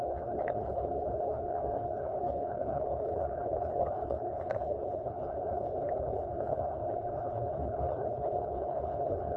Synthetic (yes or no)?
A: yes